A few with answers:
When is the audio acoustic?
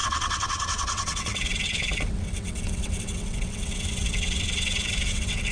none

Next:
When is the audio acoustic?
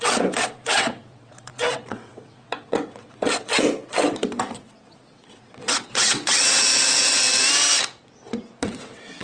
6.7-8.6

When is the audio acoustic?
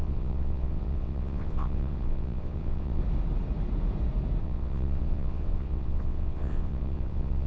3.0-4.4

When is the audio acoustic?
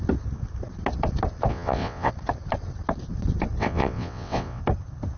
0.0-1.5; 2.1-3.6; 4.6-5.2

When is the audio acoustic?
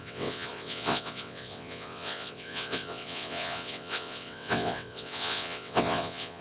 none